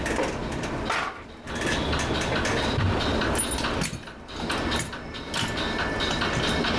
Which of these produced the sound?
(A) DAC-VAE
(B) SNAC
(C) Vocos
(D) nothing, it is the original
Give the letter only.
D